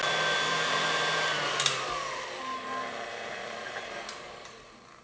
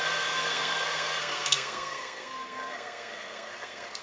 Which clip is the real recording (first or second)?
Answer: first